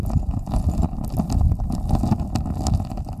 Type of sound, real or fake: real